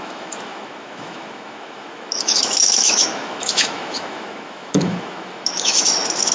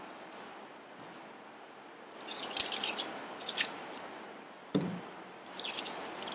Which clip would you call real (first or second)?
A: second